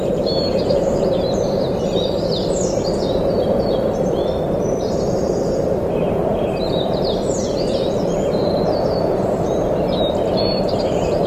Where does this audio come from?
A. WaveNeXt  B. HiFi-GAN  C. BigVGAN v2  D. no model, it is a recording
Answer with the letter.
C